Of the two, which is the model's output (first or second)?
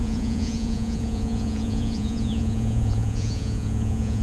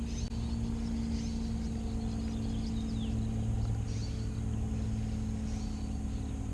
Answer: first